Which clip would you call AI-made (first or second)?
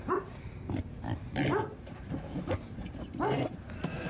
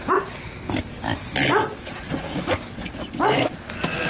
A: first